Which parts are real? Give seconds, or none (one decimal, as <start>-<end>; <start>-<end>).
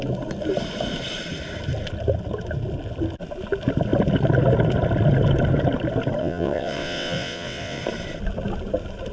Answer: 0.0-6.2; 7.8-9.1